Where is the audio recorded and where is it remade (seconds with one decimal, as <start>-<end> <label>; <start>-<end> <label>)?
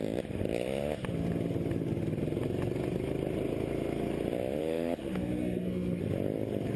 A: 0.0-4.6 recorded; 4.6-6.0 remade; 6.0-6.8 recorded